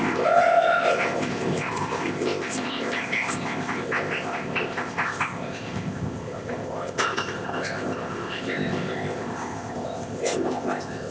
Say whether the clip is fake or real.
fake